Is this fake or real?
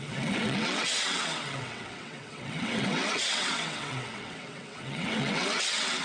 fake